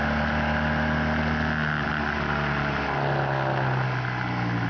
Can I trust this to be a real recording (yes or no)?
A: yes